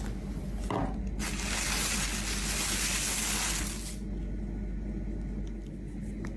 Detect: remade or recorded recorded